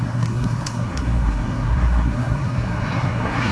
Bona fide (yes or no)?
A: no